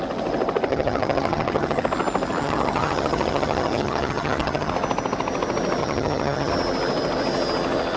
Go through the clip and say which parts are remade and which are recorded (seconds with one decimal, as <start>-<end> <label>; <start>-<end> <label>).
0.0-0.7 recorded; 0.7-1.8 remade; 1.8-2.4 recorded; 2.4-4.7 remade; 4.7-5.8 recorded; 5.8-6.5 remade; 6.5-8.0 recorded